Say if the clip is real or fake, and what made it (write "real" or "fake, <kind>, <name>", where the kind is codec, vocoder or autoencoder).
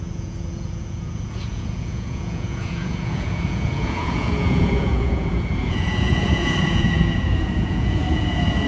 fake, vocoder, Vocos